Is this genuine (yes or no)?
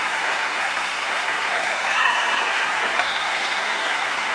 no